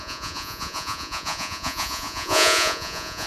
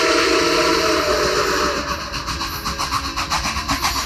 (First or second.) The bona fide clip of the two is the second